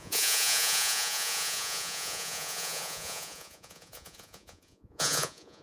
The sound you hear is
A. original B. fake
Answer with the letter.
B